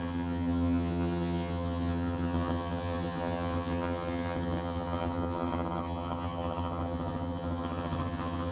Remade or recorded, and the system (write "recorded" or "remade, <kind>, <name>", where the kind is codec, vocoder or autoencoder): remade, vocoder, HiFi-GAN